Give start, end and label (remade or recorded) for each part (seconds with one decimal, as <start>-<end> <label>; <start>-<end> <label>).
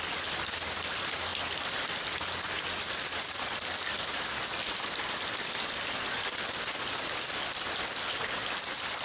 0.0-9.0 recorded